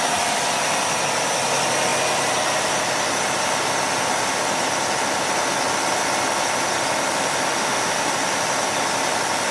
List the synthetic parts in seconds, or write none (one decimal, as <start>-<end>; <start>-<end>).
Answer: 7.6-8.1